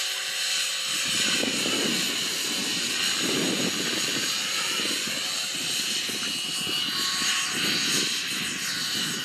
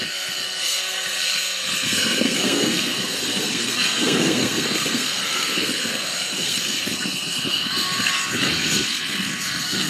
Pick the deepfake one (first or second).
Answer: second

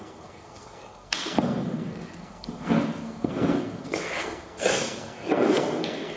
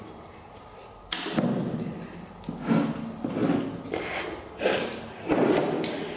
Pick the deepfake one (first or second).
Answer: first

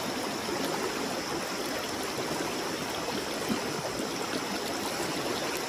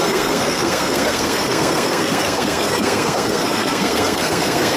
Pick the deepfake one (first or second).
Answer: second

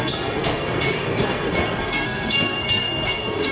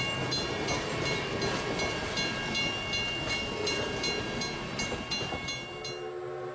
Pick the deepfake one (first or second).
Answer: first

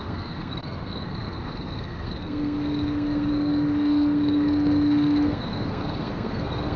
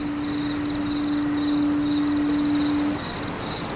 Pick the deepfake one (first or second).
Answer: first